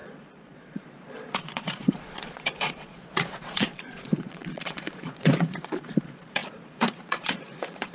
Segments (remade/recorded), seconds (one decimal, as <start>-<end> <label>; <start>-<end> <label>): 0.0-7.9 remade